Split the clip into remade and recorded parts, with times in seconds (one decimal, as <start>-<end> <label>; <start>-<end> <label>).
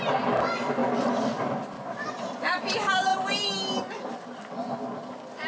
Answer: 0.0-5.5 recorded